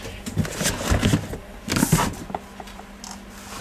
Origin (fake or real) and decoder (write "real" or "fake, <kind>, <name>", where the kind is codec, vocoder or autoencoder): real